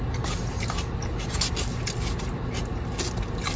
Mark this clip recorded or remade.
recorded